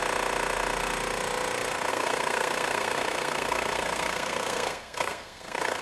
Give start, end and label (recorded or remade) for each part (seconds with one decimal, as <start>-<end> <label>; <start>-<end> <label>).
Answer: 0.0-1.9 recorded; 1.9-5.8 remade